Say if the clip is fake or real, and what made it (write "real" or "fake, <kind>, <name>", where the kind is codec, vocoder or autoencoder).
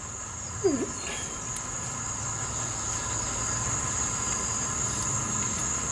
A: real